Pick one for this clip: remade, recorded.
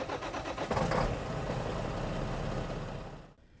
recorded